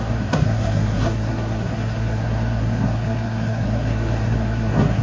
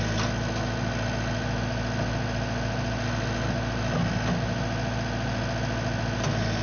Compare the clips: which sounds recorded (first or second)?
second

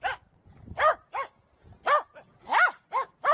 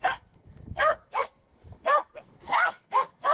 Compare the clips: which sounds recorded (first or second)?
first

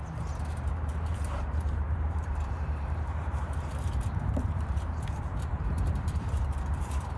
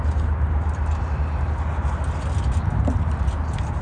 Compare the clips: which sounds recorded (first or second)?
second